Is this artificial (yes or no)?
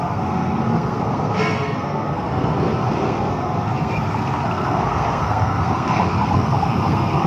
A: yes